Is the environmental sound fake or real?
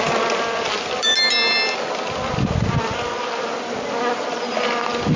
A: real